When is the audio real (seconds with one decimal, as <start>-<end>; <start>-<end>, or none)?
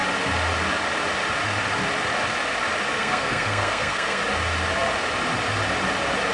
0.0-2.9; 4.2-6.3